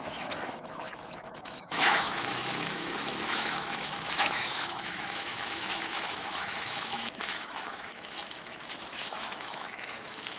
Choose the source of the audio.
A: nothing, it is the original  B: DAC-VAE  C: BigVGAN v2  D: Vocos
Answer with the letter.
B